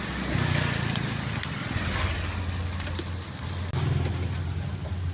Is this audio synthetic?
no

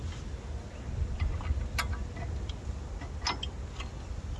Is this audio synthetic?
no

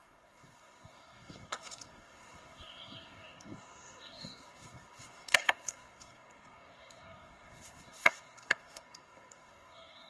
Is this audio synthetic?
yes